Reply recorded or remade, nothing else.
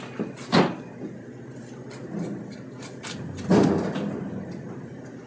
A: recorded